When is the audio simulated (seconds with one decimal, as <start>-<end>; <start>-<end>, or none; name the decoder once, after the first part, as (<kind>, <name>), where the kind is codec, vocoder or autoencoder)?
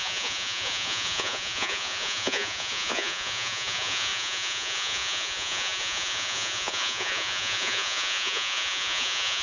0.0-9.4 (vocoder, Vocos)